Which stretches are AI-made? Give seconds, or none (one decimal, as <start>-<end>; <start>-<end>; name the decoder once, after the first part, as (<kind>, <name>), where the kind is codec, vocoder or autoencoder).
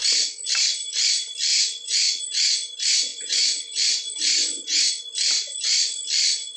1.5-2.2 (vocoder, Vocos); 3.1-3.9; 4.4-4.9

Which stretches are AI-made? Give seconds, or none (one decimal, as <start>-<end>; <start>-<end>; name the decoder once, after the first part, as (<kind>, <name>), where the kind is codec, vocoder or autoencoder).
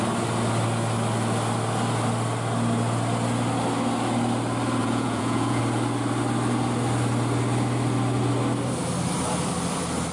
4.8-5.6 (vocoder, Vocos)